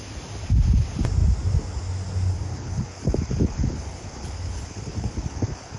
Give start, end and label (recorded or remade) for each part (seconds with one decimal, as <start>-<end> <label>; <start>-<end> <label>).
0.0-2.5 recorded; 2.5-5.8 remade